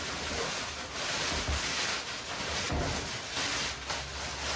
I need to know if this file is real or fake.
real